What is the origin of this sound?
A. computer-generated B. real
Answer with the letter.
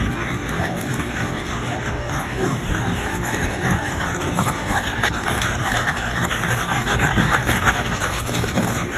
A